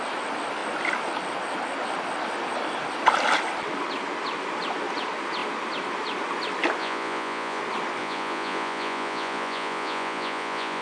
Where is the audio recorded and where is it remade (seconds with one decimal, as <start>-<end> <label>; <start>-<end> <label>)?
0.0-6.8 recorded; 6.8-7.6 remade; 7.6-8.0 recorded; 8.0-10.8 remade